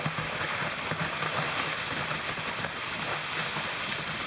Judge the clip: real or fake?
real